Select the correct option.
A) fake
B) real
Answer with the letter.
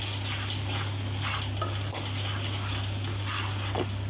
B